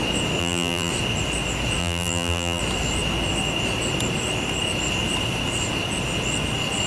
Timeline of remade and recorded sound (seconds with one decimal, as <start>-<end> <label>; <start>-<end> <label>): 0.0-0.4 recorded; 0.4-0.9 remade; 0.9-1.8 recorded; 1.8-2.6 remade; 2.6-6.9 recorded